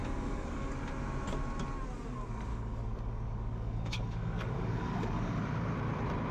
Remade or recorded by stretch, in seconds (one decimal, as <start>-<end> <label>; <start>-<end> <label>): 0.0-0.7 remade; 0.7-2.5 recorded; 2.5-5.4 remade; 5.4-6.3 recorded

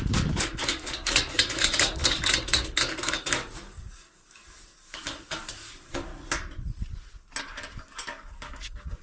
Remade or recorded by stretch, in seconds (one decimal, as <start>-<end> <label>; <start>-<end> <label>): 0.0-6.1 remade; 6.1-7.4 recorded; 7.4-9.0 remade

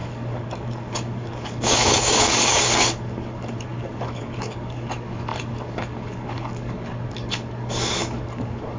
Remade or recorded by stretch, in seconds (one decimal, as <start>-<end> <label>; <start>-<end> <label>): 0.0-8.8 remade